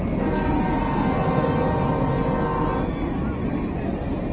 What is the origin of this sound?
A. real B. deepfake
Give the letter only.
A